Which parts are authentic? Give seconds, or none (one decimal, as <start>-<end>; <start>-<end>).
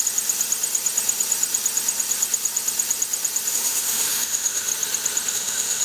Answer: 0.0-3.5; 4.7-5.3